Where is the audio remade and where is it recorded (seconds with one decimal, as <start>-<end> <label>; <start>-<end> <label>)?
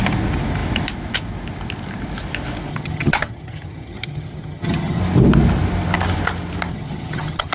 0.0-2.7 recorded; 2.7-5.0 remade; 5.0-6.7 recorded; 6.7-7.5 remade